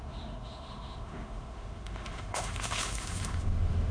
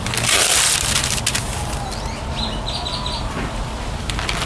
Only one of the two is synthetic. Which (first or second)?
first